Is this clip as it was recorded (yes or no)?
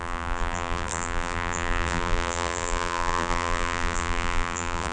no